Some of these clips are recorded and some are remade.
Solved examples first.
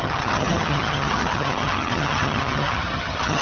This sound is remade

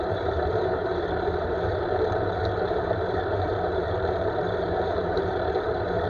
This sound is remade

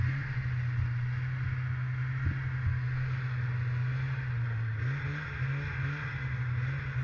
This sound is recorded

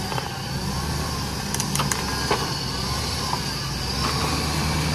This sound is recorded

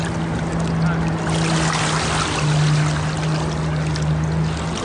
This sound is recorded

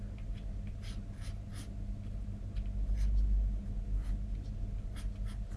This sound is recorded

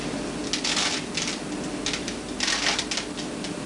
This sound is recorded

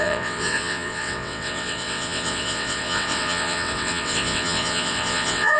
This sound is remade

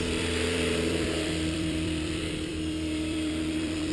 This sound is remade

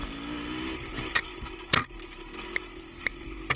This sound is recorded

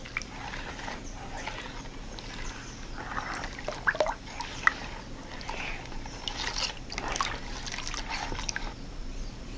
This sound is recorded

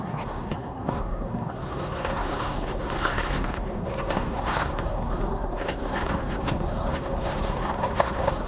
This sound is remade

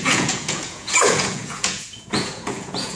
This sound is remade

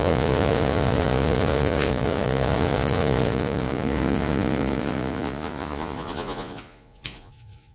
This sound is remade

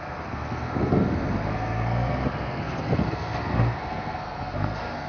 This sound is remade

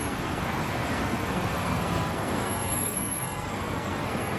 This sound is remade